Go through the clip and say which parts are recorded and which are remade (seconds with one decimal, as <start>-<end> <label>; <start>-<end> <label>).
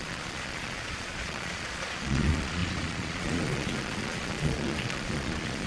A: 0.0-5.7 remade